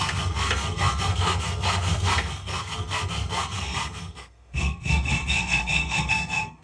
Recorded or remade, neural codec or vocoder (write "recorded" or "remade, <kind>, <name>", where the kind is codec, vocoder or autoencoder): remade, codec, SNAC